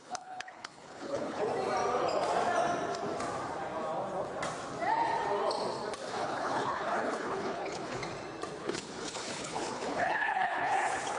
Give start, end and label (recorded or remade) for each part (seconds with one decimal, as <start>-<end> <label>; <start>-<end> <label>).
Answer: 0.0-1.5 remade; 1.5-6.1 recorded; 6.1-8.0 remade; 8.0-8.6 recorded; 8.6-11.2 remade